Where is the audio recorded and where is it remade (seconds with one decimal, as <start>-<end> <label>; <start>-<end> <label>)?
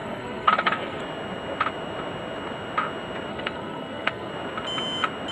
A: 0.0-1.0 remade; 1.0-3.3 recorded; 3.3-4.3 remade; 4.3-5.3 recorded